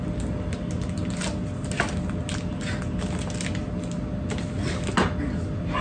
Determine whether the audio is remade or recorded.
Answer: recorded